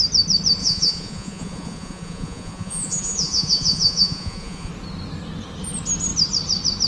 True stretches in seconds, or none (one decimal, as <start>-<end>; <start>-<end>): 0.0-0.6; 4.7-6.9